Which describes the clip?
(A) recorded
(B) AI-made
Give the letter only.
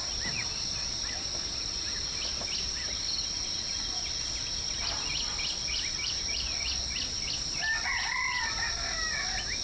A